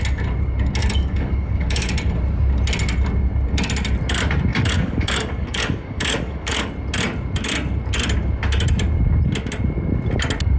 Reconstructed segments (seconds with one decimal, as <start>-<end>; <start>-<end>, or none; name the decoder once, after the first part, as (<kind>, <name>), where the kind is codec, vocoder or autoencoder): 0.8-1.9 (codec, DAC); 4.5-6.7